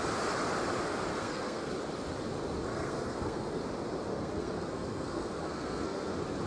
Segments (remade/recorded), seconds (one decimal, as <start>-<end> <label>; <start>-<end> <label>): 0.0-1.1 recorded; 1.1-1.7 remade; 1.7-2.7 recorded; 2.7-3.6 remade; 3.6-4.1 recorded; 4.1-6.1 remade; 6.1-6.5 recorded